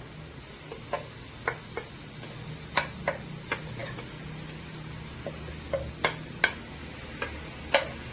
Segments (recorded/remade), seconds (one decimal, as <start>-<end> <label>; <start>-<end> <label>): 0.0-8.1 recorded